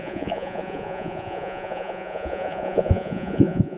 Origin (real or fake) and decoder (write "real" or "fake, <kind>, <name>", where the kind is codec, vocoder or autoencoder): fake, vocoder, Vocos